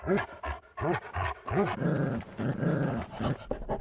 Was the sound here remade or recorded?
recorded